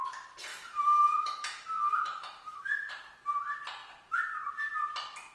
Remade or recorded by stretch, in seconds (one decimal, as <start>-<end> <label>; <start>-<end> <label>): 0.0-0.5 recorded; 0.5-2.9 remade; 2.9-5.3 recorded